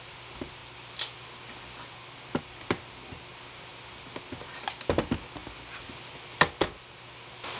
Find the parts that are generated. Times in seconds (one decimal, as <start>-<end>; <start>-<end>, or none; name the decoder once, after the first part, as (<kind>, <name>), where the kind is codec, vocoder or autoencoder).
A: none